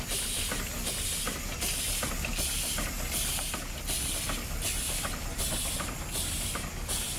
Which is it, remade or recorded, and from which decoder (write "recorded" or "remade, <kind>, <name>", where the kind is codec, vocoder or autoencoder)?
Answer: recorded